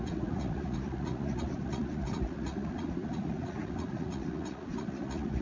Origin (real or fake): fake